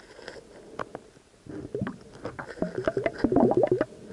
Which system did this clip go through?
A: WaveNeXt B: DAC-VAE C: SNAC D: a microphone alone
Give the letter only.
D